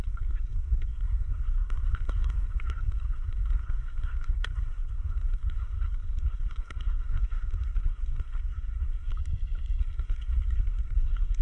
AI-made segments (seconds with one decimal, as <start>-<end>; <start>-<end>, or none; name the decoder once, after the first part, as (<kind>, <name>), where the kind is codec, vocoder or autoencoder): 0.0-9.1 (codec, SNAC); 9.8-11.4

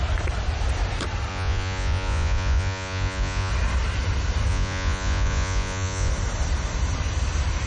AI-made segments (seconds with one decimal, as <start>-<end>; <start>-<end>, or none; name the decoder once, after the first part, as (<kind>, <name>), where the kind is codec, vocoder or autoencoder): 1.3-3.5 (vocoder, Vocos); 4.5-6.1